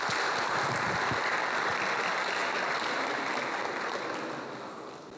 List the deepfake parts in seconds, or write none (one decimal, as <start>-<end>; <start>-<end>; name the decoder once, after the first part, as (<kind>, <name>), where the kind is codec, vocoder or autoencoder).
none